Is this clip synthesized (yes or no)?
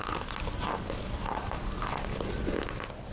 no